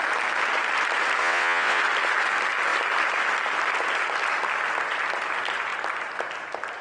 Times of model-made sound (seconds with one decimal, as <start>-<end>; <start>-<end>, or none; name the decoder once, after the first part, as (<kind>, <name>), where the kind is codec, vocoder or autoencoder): 1.2-1.8 (vocoder, WaveNeXt)